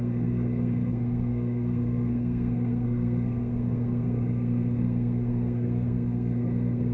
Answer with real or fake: fake